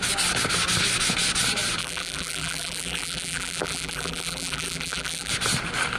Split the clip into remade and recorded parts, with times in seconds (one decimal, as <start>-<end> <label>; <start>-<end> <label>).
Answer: 0.0-1.8 recorded; 1.8-5.3 remade; 5.3-6.0 recorded